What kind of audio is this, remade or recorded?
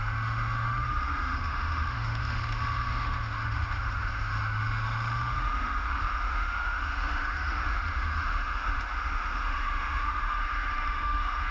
remade